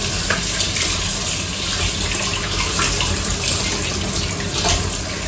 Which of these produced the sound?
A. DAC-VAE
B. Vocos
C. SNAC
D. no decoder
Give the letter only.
D